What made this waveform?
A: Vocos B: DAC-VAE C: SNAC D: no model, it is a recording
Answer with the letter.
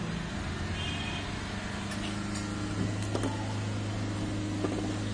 D